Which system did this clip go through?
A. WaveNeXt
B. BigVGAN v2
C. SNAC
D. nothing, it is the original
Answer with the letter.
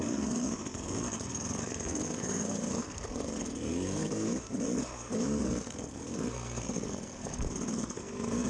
C